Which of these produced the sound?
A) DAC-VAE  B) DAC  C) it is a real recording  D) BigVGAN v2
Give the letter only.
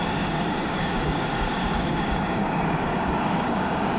B